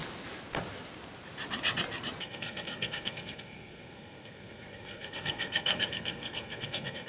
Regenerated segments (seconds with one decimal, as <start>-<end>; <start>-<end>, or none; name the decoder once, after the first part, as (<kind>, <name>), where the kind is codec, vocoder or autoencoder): 2.2-7.1 (codec, SNAC)